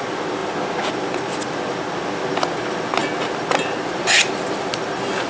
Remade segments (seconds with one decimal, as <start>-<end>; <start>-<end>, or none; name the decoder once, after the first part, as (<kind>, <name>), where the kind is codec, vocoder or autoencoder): none